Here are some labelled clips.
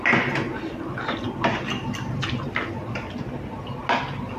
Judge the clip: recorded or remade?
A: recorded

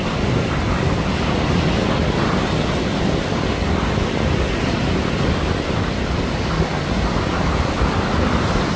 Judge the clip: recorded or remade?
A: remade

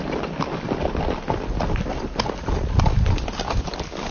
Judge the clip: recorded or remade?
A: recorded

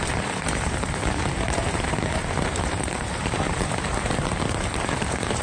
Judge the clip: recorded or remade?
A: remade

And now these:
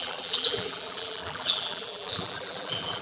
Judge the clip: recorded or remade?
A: remade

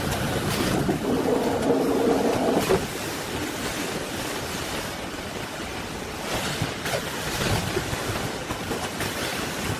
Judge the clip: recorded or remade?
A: recorded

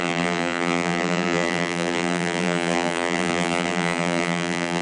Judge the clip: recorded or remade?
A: remade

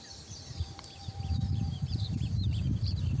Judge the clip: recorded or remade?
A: remade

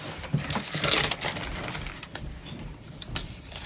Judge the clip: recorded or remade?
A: remade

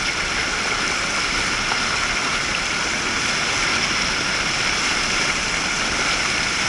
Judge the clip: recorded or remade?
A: remade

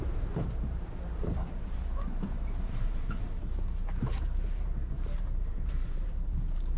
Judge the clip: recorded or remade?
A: remade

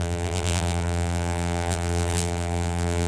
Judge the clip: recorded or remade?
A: remade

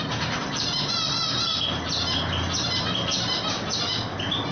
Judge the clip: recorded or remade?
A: recorded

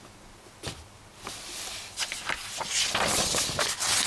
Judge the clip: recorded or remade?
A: recorded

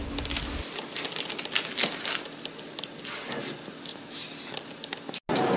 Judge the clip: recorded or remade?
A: recorded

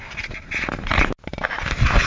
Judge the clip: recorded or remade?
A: recorded